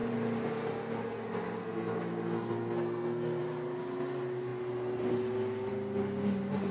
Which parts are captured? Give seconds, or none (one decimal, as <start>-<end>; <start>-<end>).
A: 0.0-1.6; 3.4-6.7